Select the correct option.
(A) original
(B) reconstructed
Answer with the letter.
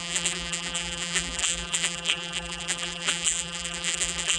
B